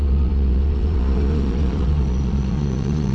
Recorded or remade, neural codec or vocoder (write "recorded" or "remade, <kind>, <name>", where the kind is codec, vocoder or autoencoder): remade, vocoder, Vocos